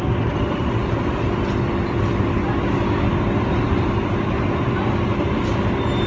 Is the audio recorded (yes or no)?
yes